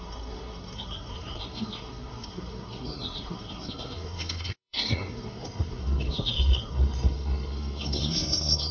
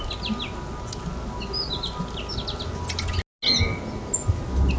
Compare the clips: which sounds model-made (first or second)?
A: first